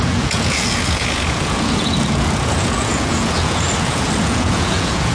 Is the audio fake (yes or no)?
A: yes